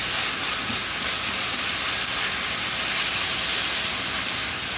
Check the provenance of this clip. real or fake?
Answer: real